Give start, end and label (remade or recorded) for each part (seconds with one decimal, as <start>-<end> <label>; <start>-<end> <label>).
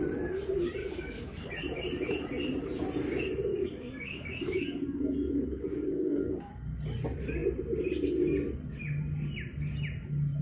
0.0-0.8 recorded; 0.8-1.5 remade; 1.5-3.5 recorded; 3.5-6.5 remade; 6.5-10.4 recorded